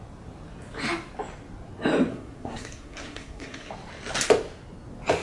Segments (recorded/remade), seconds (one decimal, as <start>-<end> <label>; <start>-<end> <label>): 0.0-2.1 recorded; 2.1-3.7 remade; 3.7-5.2 recorded